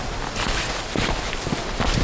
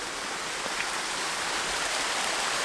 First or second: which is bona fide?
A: first